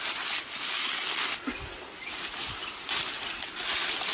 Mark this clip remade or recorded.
recorded